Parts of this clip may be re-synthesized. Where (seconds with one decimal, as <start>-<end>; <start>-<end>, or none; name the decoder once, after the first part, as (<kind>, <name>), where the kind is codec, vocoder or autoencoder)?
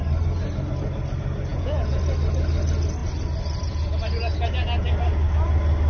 1.5-2.0 (vocoder, Vocos)